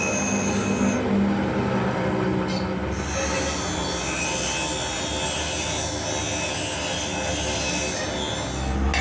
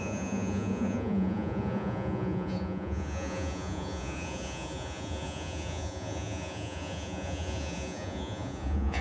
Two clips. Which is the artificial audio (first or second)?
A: second